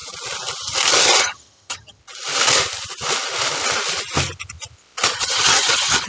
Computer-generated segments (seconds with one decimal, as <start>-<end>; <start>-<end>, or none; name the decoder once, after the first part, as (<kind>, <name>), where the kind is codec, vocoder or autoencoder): 1.2-2.0 (vocoder, HiFi-GAN); 5.2-6.1